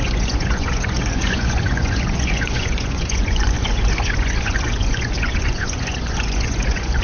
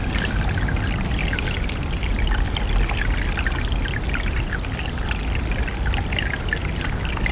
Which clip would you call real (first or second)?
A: second